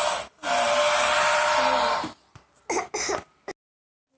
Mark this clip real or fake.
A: real